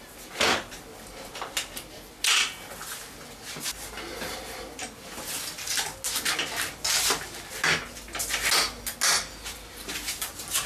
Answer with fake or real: real